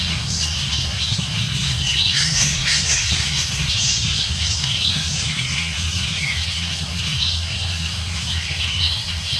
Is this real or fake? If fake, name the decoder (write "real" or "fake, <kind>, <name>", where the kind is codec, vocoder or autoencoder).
fake, codec, SNAC